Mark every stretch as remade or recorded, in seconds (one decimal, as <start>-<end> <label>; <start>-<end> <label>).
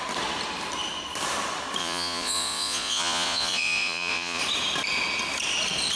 0.0-1.8 recorded; 1.8-4.4 remade; 4.4-6.0 recorded